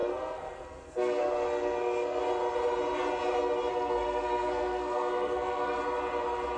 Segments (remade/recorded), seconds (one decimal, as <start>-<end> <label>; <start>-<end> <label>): 0.0-2.2 remade; 2.2-3.7 recorded; 3.7-5.8 remade; 5.8-6.6 recorded